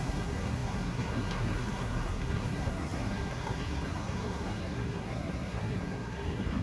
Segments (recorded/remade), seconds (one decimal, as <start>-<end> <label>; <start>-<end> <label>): 0.0-6.6 remade